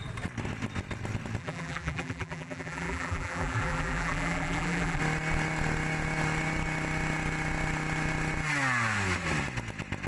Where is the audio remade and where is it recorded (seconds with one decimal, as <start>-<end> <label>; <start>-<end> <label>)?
0.0-1.4 recorded; 1.4-5.0 remade; 5.0-10.1 recorded

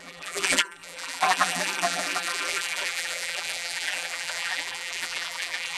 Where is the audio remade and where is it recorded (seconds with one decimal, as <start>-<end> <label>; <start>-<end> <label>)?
0.0-5.8 remade

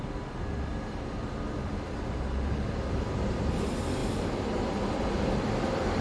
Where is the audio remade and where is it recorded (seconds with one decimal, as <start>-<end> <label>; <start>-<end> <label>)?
0.0-4.0 recorded; 4.0-5.4 remade; 5.4-6.0 recorded

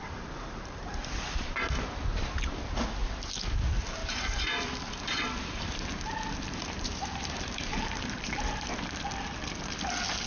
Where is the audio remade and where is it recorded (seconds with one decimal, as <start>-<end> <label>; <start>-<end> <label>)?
0.0-0.8 remade; 0.8-4.0 recorded; 4.0-8.7 remade; 8.7-10.3 recorded

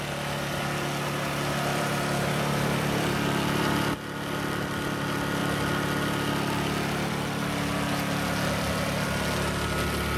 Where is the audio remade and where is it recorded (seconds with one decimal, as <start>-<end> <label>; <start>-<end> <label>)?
0.0-1.7 recorded; 1.7-3.9 remade; 3.9-10.2 recorded